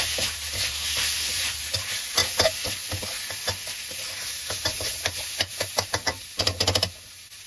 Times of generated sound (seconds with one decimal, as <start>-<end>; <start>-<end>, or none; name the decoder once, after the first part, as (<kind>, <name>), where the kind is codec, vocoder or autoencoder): 0.0-2.2 (vocoder, BigVGAN v2); 4.1-7.5